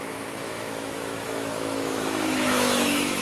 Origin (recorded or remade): remade